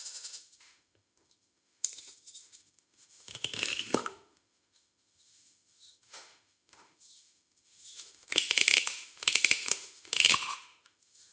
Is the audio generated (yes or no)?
yes